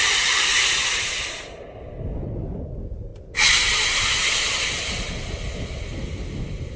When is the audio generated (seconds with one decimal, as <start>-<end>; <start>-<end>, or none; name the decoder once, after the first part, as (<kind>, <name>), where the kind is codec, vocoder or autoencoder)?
none